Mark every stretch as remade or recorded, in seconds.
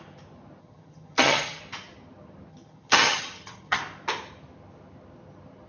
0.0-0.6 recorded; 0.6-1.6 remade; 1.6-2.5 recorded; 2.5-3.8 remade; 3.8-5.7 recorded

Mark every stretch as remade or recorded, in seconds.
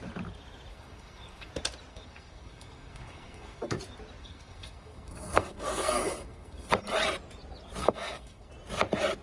0.0-0.7 recorded; 0.7-1.5 remade; 1.5-1.9 recorded; 1.9-3.8 remade; 3.8-4.2 recorded; 4.2-6.7 remade; 6.7-7.8 recorded; 7.8-8.5 remade; 8.5-9.2 recorded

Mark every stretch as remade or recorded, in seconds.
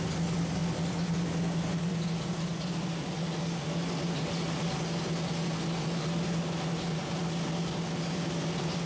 0.0-8.9 recorded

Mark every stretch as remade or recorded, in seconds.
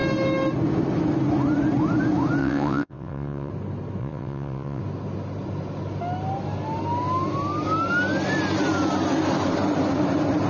0.0-2.4 recorded; 2.4-3.5 remade; 3.5-4.0 recorded; 4.0-4.8 remade; 4.8-10.5 recorded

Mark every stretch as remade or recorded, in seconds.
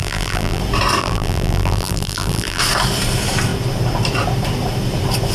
0.0-0.6 remade; 0.6-1.0 recorded; 1.0-2.6 remade; 2.6-5.3 recorded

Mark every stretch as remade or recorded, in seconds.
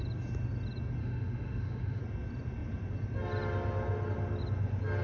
0.0-1.0 recorded; 1.0-2.0 remade; 2.0-5.0 recorded